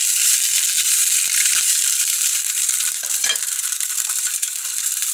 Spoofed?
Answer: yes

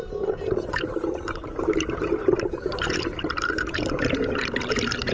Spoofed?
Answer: yes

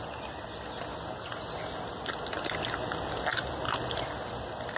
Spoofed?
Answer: no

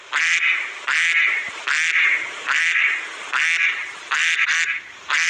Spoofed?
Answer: no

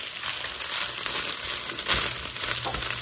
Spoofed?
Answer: no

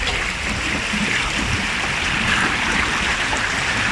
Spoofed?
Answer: yes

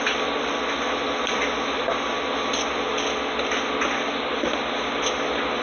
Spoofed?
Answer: no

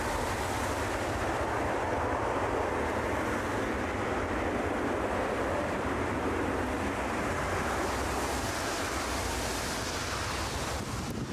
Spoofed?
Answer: no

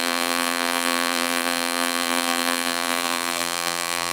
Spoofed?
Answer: yes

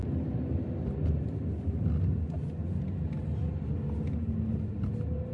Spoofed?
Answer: no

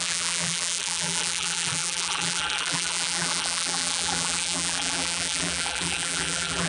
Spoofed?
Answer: yes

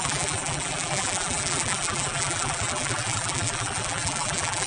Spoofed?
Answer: yes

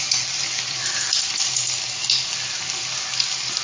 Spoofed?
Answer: yes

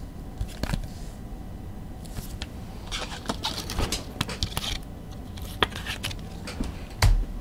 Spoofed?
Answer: no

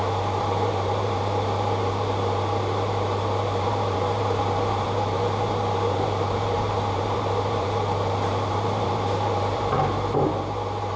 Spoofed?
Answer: yes